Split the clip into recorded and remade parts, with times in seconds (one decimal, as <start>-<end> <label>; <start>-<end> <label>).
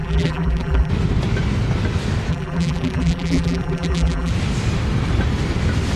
0.0-0.9 remade; 0.9-2.3 recorded; 2.3-4.3 remade; 4.3-6.0 recorded